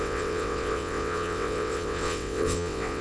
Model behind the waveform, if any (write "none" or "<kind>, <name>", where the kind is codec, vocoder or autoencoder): vocoder, WaveNeXt